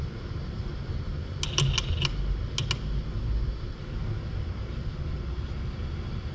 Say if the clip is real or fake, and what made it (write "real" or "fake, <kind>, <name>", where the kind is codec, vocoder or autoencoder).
real